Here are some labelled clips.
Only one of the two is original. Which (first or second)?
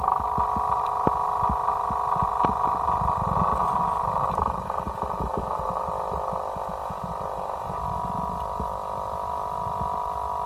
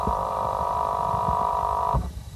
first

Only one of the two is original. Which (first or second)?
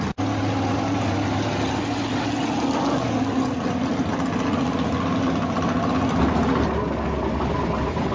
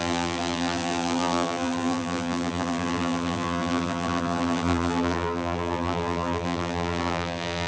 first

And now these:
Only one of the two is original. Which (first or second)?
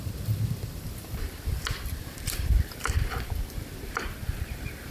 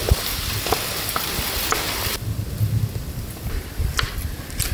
second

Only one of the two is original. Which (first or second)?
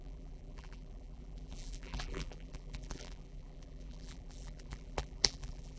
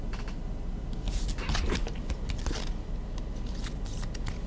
second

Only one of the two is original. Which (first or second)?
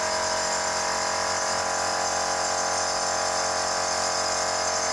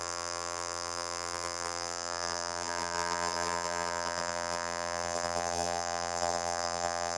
first